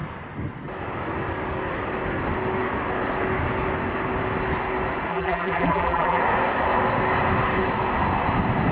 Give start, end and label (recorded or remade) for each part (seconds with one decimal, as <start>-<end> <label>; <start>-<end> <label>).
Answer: 0.0-5.1 recorded; 5.1-6.2 remade; 6.2-8.7 recorded